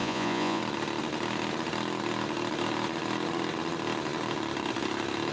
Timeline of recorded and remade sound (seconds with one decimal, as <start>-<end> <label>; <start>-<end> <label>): 0.0-0.6 remade; 0.6-5.3 recorded

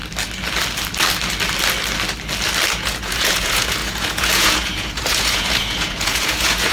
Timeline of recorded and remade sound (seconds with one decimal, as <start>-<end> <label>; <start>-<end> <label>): 0.0-2.7 recorded; 2.7-6.7 remade

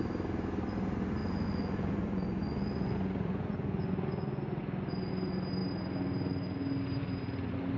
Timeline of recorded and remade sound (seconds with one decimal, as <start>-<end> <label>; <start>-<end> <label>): 0.0-1.2 recorded; 1.2-4.6 remade; 4.6-7.8 recorded

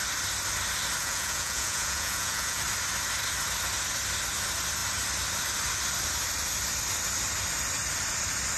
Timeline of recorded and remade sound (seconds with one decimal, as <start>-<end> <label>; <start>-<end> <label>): 0.0-1.0 recorded; 1.0-2.6 remade; 2.6-8.6 recorded

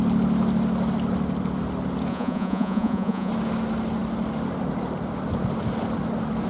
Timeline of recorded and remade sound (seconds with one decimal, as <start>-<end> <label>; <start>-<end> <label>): 0.0-2.1 recorded; 2.1-3.3 remade; 3.3-6.5 recorded